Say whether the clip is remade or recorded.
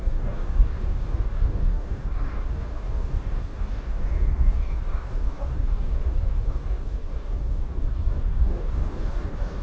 remade